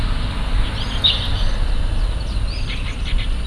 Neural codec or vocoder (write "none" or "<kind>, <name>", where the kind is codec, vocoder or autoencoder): none